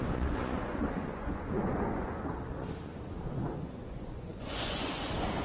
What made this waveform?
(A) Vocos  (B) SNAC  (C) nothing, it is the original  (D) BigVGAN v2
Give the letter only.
A